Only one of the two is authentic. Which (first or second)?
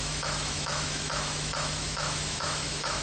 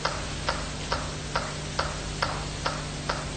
second